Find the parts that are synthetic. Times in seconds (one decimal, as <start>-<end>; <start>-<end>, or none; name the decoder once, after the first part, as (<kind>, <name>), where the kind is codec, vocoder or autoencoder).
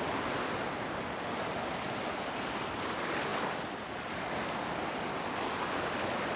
none